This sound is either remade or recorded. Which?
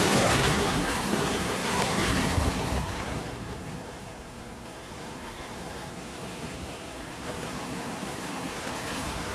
remade